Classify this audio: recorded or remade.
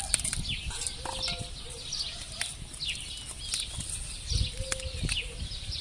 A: recorded